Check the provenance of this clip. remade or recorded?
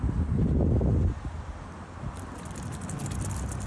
recorded